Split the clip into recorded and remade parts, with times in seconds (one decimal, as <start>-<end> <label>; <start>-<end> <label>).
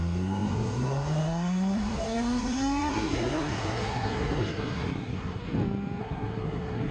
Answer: 0.0-5.4 remade; 5.4-6.0 recorded; 6.0-6.9 remade